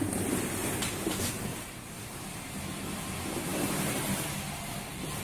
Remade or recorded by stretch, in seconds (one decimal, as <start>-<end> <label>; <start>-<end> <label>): 0.0-5.2 recorded